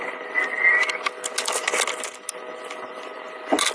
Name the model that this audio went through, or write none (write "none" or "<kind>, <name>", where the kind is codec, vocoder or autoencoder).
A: none